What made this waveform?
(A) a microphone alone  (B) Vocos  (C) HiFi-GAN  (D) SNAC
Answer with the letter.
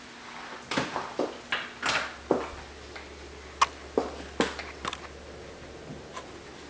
A